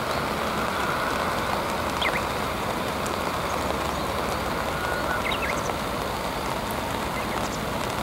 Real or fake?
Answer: real